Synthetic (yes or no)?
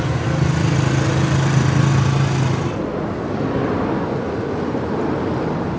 no